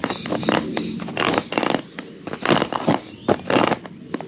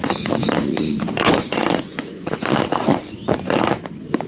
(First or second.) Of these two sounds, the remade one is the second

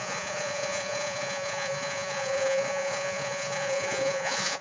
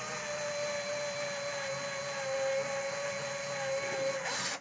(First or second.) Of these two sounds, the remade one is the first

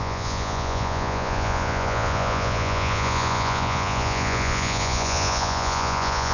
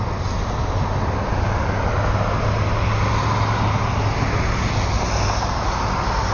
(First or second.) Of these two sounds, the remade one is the first